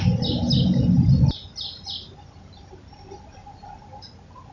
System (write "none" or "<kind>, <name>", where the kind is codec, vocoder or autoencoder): none